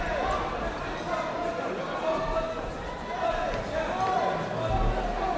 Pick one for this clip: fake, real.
real